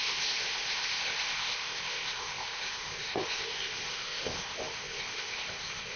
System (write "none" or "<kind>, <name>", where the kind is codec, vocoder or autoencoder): codec, ZipCodec